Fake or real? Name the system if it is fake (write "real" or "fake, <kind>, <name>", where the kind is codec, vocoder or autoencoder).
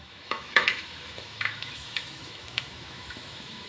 fake, autoencoder, DAC-VAE